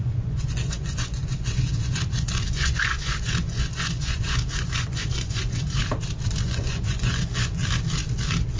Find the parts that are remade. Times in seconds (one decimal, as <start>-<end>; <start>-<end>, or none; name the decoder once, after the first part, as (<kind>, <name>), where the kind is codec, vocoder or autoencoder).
0.0-5.8 (vocoder, Vocos); 6.4-7.6